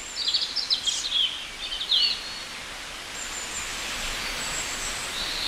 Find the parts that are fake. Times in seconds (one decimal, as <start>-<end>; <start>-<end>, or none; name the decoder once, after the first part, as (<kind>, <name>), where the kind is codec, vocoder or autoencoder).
none